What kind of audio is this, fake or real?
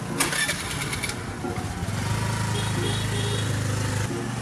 real